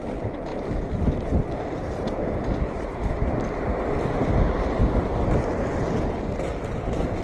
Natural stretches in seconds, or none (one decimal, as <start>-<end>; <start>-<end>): 0.0-0.5; 4.8-7.2